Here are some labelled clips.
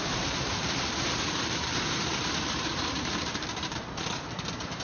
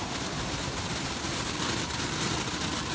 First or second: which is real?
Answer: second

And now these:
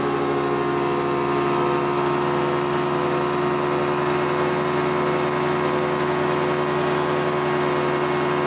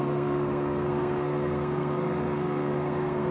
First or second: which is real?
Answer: first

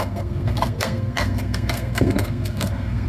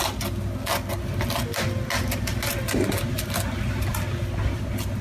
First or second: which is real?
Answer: second